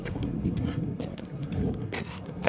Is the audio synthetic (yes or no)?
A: yes